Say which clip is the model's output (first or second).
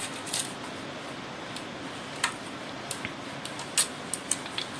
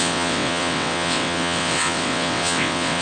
second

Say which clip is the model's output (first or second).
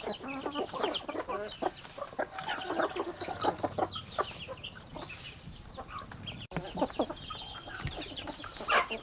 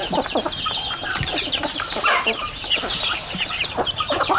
second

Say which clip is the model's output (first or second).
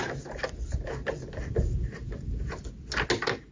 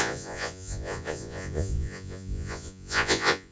second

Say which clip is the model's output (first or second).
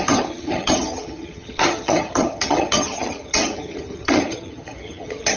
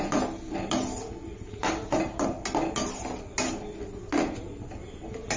first